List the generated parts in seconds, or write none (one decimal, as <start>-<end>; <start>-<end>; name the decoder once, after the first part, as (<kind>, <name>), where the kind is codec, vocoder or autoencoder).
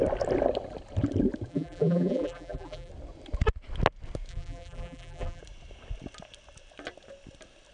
1.5-2.9 (vocoder, BigVGAN v2); 4.3-5.4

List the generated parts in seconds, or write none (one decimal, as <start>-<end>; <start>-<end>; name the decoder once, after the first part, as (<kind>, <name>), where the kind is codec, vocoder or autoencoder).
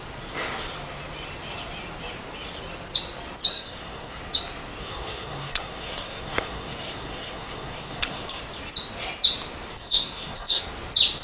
3.5-4.2 (codec, SNAC); 4.8-8.4; 9.7-10.6